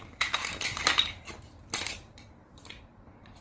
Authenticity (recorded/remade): remade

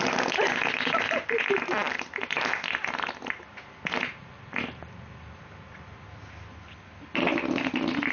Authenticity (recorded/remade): recorded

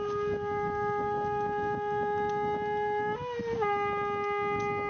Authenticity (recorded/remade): recorded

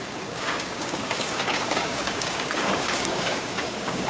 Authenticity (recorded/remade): remade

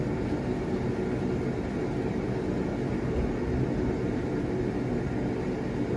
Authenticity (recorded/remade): recorded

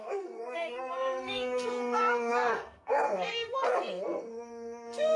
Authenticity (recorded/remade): remade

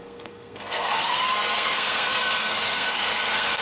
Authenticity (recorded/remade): remade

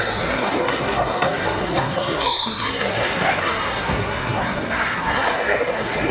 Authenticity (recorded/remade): remade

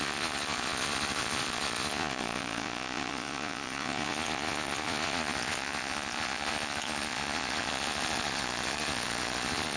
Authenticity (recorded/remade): remade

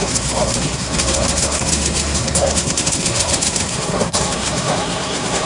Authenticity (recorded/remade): remade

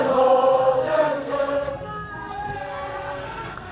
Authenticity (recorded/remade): remade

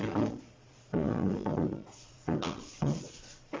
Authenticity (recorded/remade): remade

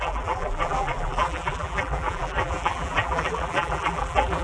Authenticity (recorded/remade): remade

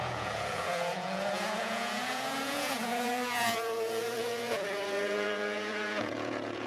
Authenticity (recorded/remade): remade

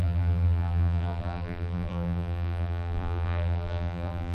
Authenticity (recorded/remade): remade